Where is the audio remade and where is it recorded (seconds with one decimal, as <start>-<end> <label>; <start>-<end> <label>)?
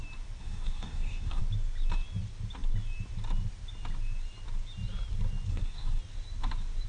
0.0-0.4 recorded; 0.4-1.4 remade; 1.4-5.5 recorded; 5.5-6.0 remade; 6.0-6.9 recorded